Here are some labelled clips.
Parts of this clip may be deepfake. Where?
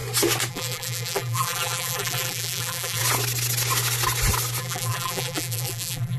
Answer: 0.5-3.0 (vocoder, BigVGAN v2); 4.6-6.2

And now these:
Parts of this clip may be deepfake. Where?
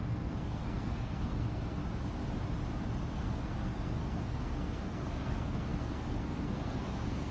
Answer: 0.0-1.8 (codec, SNAC); 3.1-7.3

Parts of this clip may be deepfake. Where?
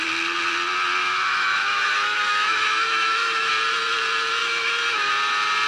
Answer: 1.0-3.5 (autoencoder, DAC-VAE); 4.4-5.1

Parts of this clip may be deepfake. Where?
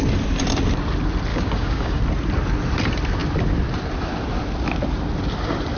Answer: 1.3-2.0 (codec, DAC)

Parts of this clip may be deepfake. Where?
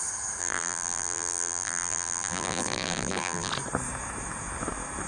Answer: 0.4-3.5 (vocoder, BigVGAN v2)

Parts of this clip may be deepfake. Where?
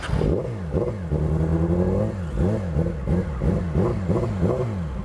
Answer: none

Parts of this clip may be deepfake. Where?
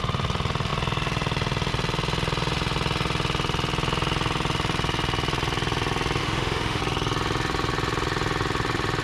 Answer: 6.2-6.8 (autoencoder, DAC-VAE)